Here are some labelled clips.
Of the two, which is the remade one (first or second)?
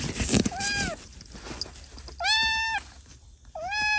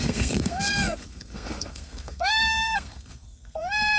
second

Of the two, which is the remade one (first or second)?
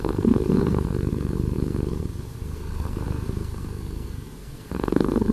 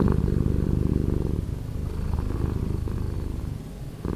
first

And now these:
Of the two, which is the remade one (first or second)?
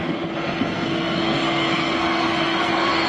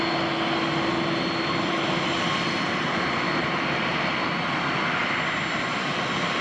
first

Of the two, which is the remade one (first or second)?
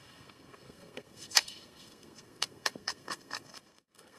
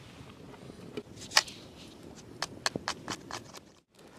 first